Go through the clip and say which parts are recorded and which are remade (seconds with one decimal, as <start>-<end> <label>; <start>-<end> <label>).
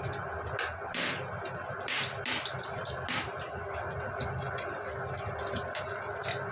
0.0-6.5 recorded